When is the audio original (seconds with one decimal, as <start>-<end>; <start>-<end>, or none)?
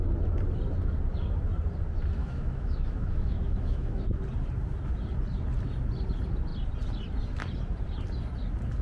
0.0-2.2; 4.0-8.8